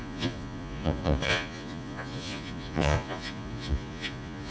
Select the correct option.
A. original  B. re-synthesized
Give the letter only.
B